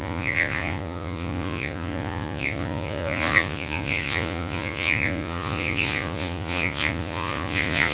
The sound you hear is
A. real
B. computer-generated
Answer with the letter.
B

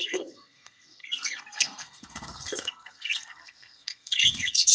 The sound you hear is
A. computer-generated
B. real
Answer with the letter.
A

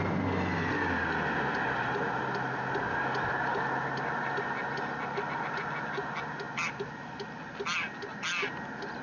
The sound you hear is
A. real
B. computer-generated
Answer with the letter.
A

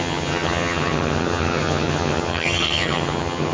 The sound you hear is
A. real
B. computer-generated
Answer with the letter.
B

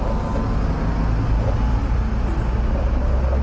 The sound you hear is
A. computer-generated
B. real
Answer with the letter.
B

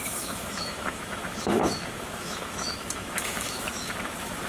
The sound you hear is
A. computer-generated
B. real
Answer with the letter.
A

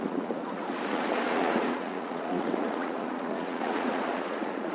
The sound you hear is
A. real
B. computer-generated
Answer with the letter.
B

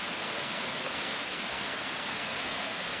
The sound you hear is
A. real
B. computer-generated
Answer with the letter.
B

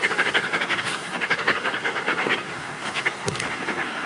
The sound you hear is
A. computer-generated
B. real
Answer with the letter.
A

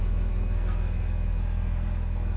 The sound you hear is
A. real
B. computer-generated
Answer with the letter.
B